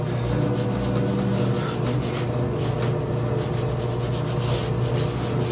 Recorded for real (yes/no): yes